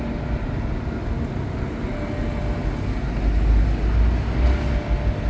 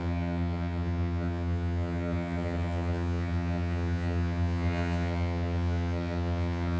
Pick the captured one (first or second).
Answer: first